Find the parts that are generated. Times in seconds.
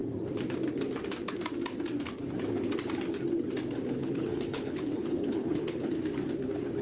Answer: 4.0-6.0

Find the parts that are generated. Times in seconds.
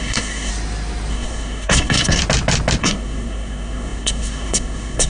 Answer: 0.0-0.5; 1.1-2.2; 2.8-5.1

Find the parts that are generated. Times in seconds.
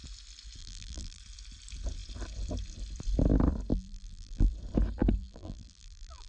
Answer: 0.6-1.2; 3.7-4.5; 5.2-6.3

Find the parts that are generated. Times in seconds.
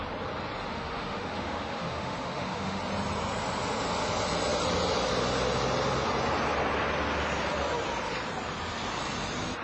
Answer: 0.7-2.8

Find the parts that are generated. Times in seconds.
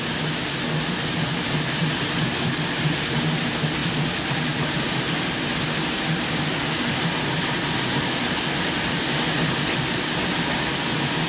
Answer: none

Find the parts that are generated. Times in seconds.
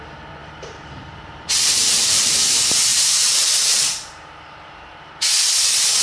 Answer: 0.4-2.3; 2.9-5.1